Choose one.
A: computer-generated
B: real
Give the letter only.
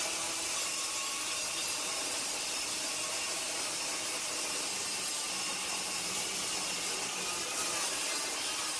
B